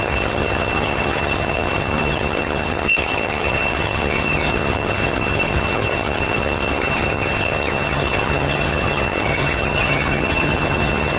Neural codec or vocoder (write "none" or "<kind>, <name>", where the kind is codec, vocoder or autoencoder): vocoder, HiFi-GAN